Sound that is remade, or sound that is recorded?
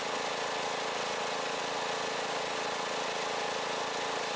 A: recorded